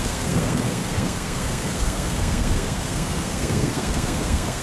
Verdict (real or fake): fake